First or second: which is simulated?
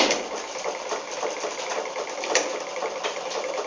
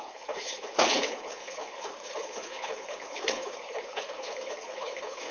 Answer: second